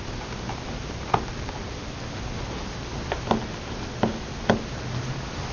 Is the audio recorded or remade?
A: recorded